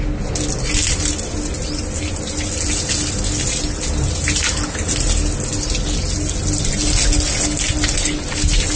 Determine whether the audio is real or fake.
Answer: real